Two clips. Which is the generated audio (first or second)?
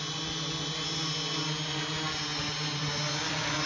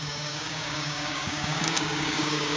second